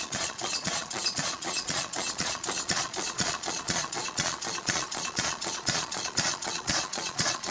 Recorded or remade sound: remade